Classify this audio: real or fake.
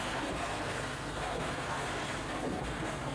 fake